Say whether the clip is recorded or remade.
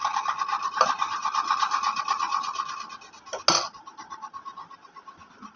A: recorded